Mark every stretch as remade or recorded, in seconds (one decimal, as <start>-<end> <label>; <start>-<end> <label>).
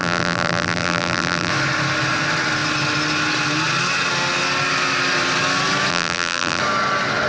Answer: 0.0-1.5 remade; 1.5-5.9 recorded; 5.9-6.6 remade; 6.6-7.3 recorded